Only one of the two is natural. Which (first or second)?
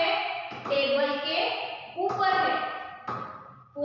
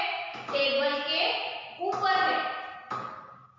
second